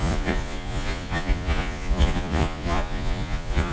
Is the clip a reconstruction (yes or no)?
yes